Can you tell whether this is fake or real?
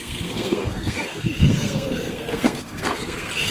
fake